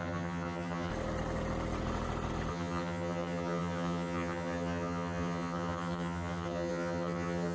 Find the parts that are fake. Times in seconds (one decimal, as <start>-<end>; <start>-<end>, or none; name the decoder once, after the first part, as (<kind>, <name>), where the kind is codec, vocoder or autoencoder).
0.0-0.9 (vocoder, HiFi-GAN); 2.5-7.5